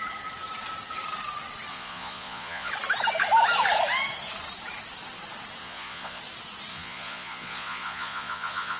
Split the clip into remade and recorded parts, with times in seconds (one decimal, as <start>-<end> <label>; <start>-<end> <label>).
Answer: 0.0-1.7 recorded; 1.7-2.7 remade; 2.7-5.6 recorded; 5.6-6.2 remade; 6.2-6.7 recorded; 6.7-8.8 remade